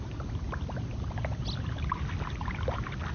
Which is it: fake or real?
real